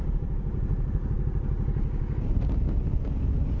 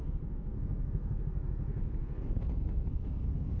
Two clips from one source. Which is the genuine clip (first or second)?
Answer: first